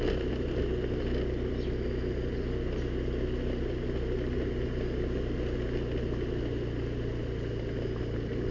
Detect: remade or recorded recorded